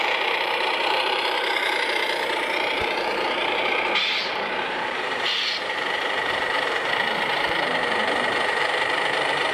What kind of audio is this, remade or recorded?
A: remade